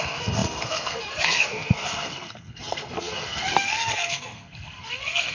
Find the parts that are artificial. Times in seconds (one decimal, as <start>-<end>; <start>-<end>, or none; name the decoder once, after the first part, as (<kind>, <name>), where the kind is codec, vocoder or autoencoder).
0.0-5.3 (codec, SNAC)